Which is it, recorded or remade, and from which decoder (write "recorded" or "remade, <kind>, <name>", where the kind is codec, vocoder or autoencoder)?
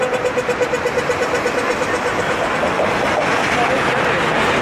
recorded